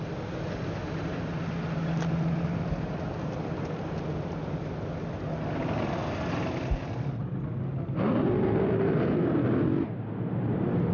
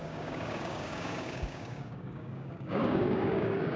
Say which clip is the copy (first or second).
second